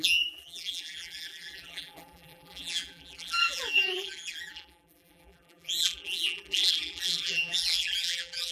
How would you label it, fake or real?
fake